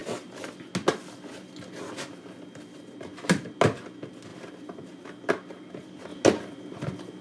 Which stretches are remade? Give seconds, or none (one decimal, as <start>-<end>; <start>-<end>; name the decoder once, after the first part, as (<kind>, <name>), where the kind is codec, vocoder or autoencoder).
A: 0.0-0.7 (vocoder, BigVGAN v2)